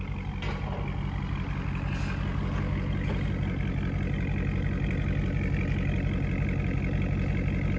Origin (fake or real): real